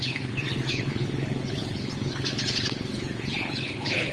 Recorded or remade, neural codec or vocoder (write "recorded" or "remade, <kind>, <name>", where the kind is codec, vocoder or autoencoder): remade, codec, HILCodec